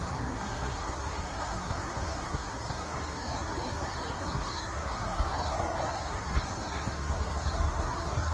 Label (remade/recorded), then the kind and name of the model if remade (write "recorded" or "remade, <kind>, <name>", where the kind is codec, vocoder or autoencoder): remade, codec, SNAC